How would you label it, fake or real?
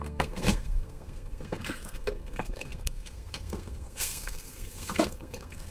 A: fake